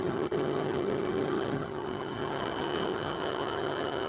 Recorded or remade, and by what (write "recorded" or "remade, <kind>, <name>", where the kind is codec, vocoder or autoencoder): remade, vocoder, HiFi-GAN